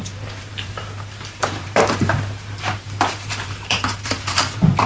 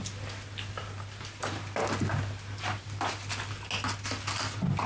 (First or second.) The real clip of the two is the second